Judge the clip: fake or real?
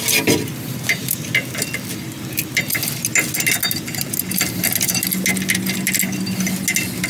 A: real